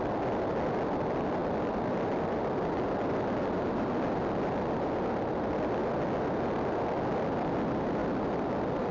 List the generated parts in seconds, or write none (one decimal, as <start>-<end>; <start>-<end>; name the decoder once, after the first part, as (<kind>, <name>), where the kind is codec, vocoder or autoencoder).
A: none